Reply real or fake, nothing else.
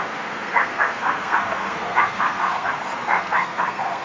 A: fake